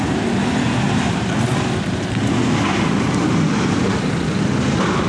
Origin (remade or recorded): recorded